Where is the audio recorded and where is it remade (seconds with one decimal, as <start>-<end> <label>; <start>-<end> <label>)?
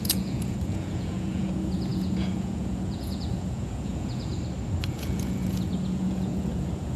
0.0-4.3 remade; 4.3-4.9 recorded; 4.9-7.0 remade